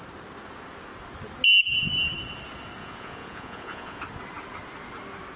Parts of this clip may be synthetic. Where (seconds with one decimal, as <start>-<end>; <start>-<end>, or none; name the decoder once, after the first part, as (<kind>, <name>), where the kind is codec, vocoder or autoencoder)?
2.8-4.0 (vocoder, Vocos)